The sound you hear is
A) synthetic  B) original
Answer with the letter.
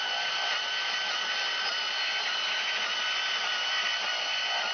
B